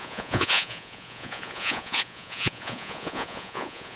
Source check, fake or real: fake